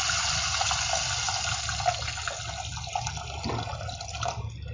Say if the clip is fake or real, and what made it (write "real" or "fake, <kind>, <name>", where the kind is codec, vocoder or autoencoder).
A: real